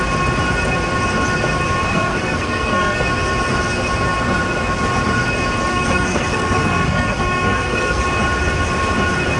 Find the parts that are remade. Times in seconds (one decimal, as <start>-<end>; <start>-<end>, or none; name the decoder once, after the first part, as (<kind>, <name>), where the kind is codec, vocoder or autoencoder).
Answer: 1.9-3.0 (codec, SNAC); 5.7-8.0

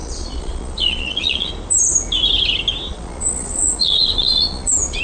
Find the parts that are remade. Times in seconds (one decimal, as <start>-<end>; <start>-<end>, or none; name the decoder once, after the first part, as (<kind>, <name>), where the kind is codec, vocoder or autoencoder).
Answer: 0.0-1.5 (vocoder, Vocos); 2.9-5.0

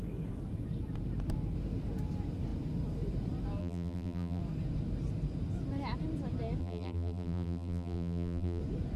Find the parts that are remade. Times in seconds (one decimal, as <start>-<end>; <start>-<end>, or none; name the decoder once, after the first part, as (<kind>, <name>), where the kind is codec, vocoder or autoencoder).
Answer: 3.6-4.4 (vocoder, BigVGAN v2); 6.6-8.6

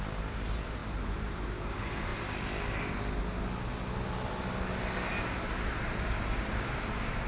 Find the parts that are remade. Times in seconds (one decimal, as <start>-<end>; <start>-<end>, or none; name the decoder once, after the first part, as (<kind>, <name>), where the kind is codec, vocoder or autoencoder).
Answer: 0.0-2.1 (vocoder, BigVGAN v2); 6.5-7.3